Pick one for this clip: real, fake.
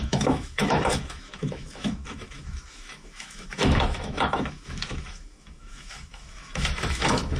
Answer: fake